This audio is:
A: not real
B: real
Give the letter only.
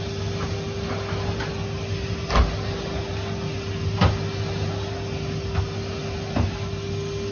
B